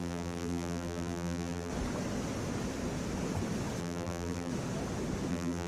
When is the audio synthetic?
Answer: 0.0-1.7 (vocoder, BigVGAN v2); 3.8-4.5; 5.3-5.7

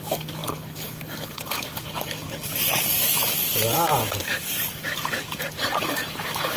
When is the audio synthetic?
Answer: 0.0-6.6 (codec, DAC)

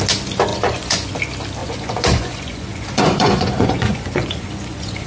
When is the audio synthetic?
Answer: 0.5-1.1 (vocoder, Vocos); 1.6-5.1